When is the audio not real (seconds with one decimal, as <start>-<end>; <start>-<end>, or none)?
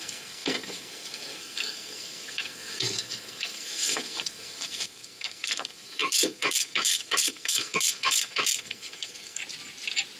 0.0-9.4